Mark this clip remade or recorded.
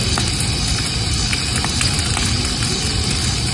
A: recorded